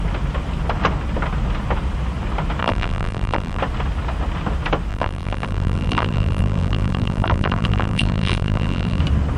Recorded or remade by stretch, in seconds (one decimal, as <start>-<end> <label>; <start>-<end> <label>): 0.0-2.6 recorded; 2.6-3.6 remade; 3.6-4.9 recorded; 4.9-9.0 remade; 9.0-9.4 recorded